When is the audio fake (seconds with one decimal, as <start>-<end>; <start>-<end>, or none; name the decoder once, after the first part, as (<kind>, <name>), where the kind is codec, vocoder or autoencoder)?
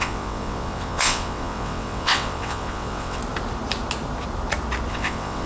0.0-3.2 (vocoder, WaveNeXt); 4.9-5.5